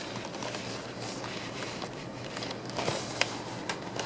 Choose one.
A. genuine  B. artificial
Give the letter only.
A